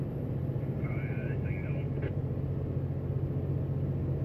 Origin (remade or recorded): recorded